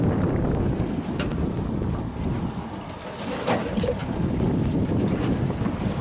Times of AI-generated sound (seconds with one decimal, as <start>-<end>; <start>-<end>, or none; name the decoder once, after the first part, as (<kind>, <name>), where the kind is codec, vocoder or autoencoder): none